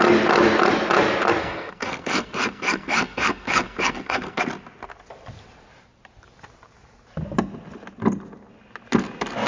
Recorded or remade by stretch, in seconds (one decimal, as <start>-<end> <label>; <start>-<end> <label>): 0.0-1.4 recorded; 1.4-4.4 remade; 4.4-9.5 recorded